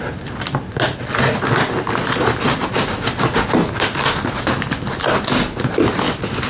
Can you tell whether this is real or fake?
real